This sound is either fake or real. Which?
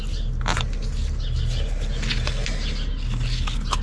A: real